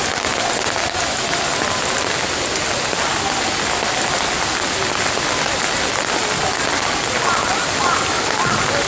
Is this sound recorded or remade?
recorded